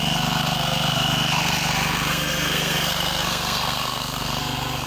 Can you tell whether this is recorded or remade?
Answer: remade